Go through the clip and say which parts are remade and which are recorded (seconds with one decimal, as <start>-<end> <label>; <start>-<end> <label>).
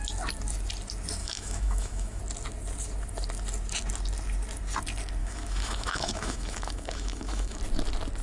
0.0-1.2 recorded; 1.2-2.2 remade; 2.2-5.2 recorded; 5.2-7.6 remade; 7.6-8.2 recorded